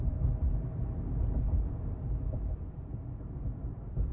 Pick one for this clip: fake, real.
real